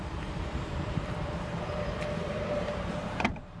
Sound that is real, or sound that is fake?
fake